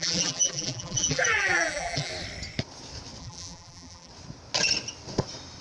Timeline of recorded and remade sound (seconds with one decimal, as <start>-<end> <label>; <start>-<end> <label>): 0.0-2.1 remade; 2.1-3.2 recorded; 3.2-4.1 remade; 4.1-5.6 recorded